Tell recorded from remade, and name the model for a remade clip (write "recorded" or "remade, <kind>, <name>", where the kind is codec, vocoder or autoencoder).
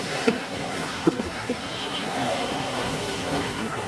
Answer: remade, codec, SNAC